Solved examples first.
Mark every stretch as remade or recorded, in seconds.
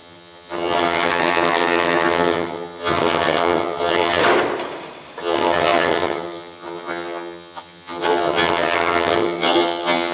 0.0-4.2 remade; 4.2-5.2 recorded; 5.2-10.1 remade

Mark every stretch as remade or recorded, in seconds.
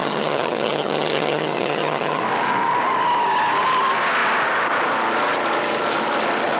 0.0-2.2 remade; 2.2-6.6 recorded